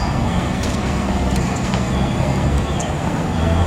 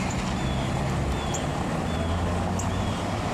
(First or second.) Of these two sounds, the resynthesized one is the first